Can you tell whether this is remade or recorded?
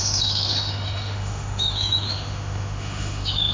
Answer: remade